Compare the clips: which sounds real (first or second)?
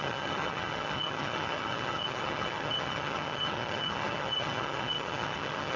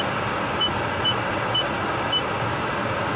second